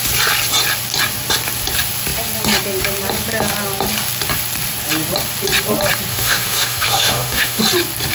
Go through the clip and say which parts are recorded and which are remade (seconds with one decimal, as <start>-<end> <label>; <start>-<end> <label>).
0.0-6.1 recorded; 6.1-7.6 remade; 7.6-8.1 recorded